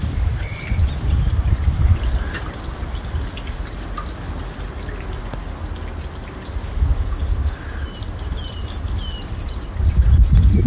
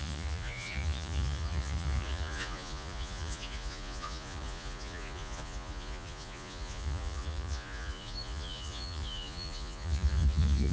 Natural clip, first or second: first